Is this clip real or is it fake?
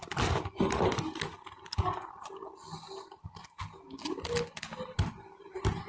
real